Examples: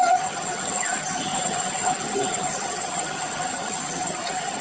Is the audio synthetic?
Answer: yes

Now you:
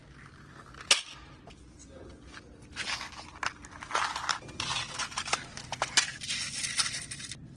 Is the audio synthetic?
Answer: no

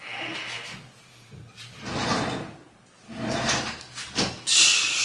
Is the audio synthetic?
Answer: no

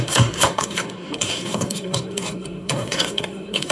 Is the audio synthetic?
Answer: yes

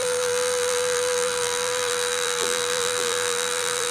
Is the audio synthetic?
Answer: yes